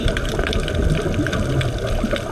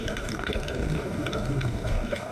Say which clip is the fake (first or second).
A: second